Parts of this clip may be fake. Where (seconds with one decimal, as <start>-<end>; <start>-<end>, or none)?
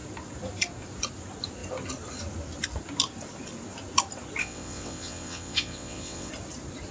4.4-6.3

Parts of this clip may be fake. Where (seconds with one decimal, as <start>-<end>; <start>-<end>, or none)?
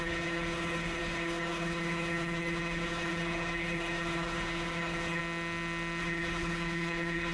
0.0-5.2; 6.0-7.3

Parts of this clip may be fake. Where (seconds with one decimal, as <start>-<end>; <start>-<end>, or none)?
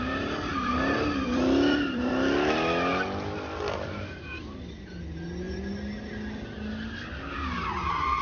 0.5-2.1